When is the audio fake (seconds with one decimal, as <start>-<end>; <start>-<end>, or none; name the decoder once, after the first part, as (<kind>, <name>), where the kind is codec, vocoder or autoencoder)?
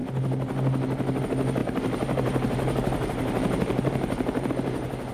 1.6-4.5 (vocoder, BigVGAN v2)